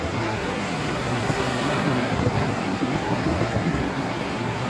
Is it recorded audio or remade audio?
remade